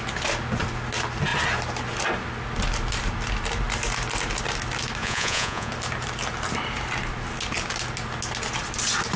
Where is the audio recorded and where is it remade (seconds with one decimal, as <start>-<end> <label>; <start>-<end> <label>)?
0.0-5.0 recorded; 5.0-5.7 remade; 5.7-9.2 recorded